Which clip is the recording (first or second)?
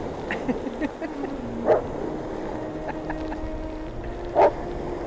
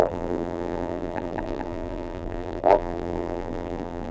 first